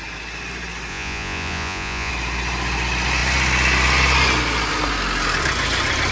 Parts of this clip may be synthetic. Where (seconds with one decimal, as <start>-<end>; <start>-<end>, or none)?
0.9-2.1